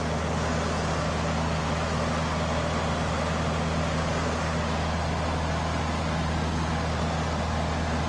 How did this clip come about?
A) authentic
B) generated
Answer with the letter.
A